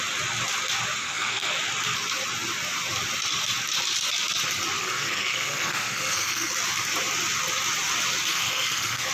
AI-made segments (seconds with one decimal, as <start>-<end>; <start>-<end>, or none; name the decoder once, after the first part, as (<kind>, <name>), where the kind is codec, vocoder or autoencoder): 1.0-1.5 (codec, SNAC); 4.8-6.5; 8.3-9.1